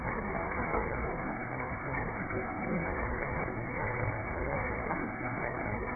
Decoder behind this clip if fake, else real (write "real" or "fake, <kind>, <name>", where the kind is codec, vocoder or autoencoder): fake, codec, SNAC